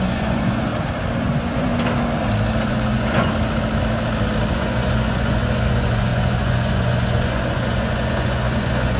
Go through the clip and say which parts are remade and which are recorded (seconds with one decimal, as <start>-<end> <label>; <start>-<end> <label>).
0.0-0.7 remade; 0.7-1.2 recorded; 1.2-1.7 remade; 1.7-2.7 recorded; 2.7-3.3 remade; 3.3-4.5 recorded; 4.5-9.0 remade